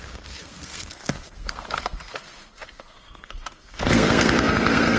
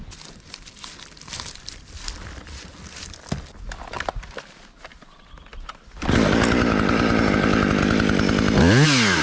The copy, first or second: first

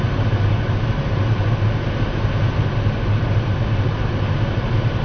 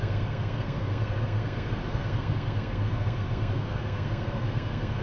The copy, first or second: second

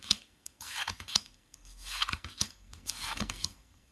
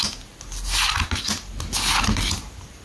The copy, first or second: first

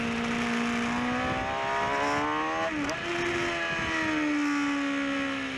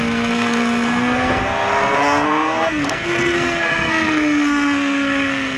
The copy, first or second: second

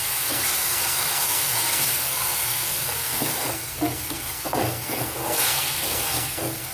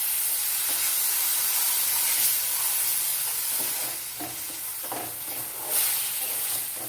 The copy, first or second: first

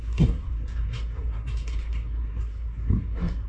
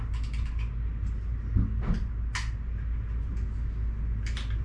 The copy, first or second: first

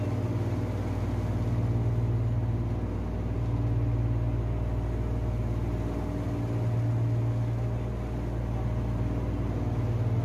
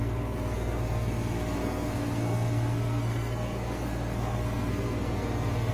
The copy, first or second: second